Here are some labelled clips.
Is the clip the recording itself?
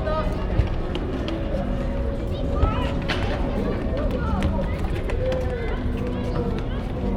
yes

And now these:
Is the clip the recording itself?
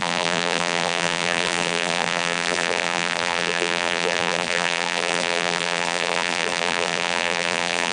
no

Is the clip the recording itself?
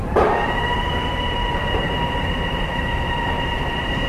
no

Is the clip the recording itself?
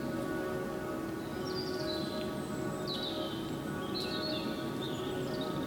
yes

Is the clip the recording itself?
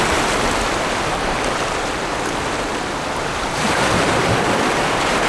no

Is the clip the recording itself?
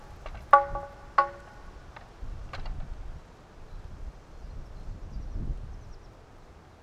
yes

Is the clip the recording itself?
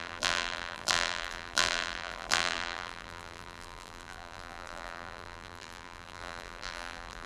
no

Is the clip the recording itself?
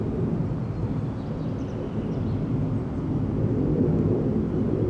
yes